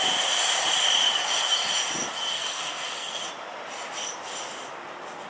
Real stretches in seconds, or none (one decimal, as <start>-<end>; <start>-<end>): 0.0-2.3; 3.2-5.3